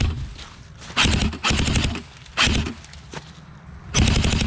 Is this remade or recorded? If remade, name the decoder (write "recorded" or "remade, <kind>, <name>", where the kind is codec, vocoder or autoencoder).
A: recorded